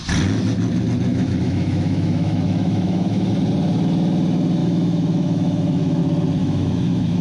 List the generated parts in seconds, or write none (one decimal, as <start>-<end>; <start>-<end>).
1.1-3.3; 4.6-6.0; 6.4-7.2